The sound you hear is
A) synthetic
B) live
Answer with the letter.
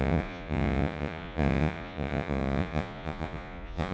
A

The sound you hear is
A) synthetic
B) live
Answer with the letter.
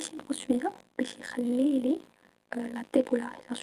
A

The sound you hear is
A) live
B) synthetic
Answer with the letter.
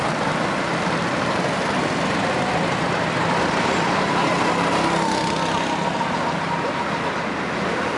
A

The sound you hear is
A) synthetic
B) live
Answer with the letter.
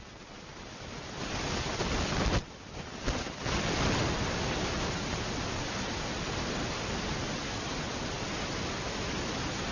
B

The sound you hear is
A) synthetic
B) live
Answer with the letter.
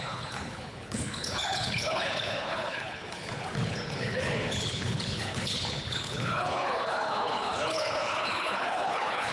A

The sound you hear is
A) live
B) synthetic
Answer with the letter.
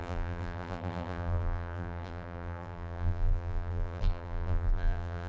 B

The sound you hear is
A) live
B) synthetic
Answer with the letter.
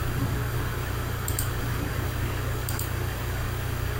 B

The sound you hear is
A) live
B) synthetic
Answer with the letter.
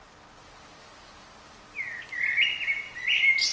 A